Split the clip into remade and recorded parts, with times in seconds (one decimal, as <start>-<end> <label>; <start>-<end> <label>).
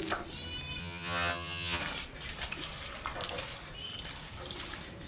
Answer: 0.0-0.8 recorded; 0.8-1.8 remade; 1.8-5.1 recorded